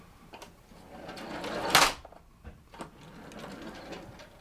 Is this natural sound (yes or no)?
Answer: yes